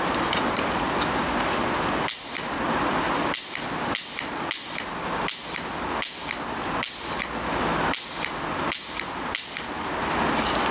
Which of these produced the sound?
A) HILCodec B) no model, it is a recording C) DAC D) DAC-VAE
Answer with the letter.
B